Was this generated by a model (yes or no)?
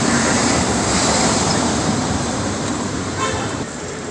yes